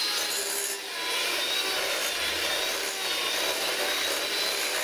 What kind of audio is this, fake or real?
real